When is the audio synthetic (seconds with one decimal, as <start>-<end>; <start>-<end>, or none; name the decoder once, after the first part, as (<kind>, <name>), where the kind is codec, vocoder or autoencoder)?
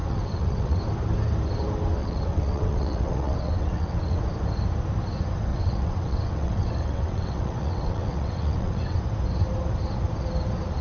0.0-0.8 (vocoder, WaveNeXt); 2.0-4.2; 5.5-9.0